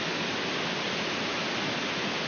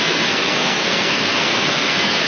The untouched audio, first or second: first